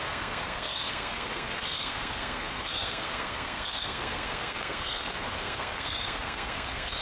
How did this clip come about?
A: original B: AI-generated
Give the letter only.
B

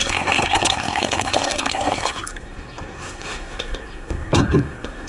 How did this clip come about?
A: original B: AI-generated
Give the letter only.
B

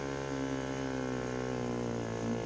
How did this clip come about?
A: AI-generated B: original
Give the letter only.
B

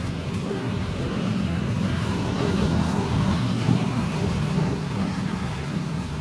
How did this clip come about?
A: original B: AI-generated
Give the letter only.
B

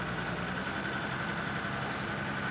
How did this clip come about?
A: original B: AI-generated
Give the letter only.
A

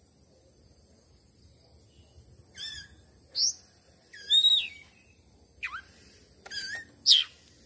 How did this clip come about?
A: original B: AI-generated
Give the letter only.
A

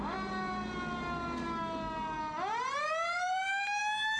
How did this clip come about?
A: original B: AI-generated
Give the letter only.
A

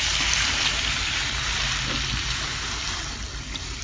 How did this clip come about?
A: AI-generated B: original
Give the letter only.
B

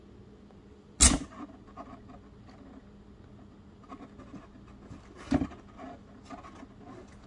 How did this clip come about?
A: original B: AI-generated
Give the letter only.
A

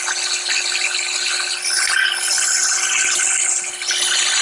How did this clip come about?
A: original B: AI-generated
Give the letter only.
A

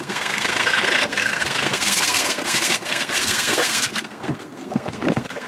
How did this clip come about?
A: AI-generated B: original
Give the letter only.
A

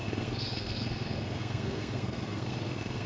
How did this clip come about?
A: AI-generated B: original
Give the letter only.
A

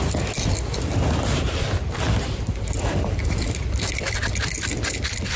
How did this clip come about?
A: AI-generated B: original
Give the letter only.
B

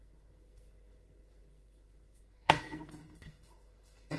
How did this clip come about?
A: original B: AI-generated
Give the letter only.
B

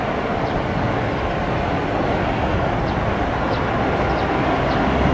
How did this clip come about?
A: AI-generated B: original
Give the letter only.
B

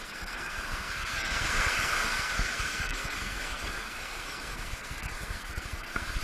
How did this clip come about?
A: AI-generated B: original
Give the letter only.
A